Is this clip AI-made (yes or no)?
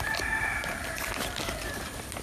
no